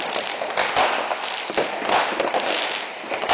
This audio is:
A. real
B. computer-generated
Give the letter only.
A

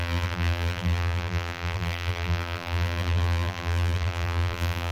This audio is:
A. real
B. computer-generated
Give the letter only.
B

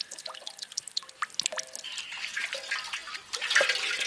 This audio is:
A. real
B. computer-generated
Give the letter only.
A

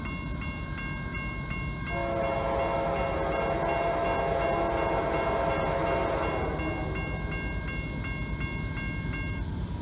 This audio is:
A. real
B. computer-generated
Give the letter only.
A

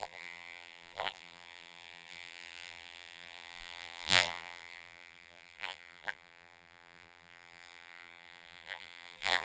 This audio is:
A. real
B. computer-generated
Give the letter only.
B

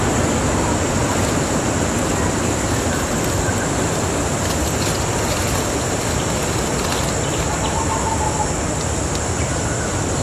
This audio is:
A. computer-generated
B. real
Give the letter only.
B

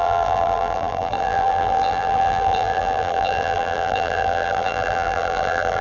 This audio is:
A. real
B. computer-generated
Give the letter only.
B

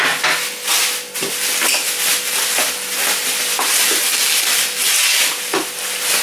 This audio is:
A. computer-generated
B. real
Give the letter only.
B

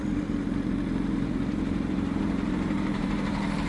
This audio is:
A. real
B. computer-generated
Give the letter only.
B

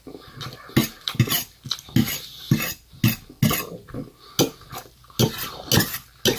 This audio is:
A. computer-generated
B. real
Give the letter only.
B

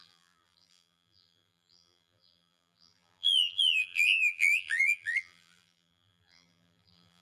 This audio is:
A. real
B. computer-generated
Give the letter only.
B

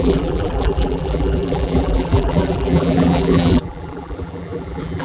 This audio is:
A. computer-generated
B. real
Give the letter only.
A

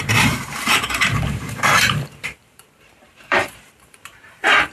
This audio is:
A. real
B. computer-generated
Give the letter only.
B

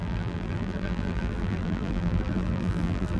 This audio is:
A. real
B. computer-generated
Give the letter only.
B